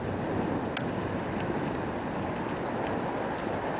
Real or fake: real